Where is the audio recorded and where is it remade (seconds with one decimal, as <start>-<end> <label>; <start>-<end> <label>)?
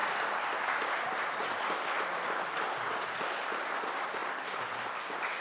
0.0-4.2 recorded; 4.2-4.9 remade; 4.9-5.4 recorded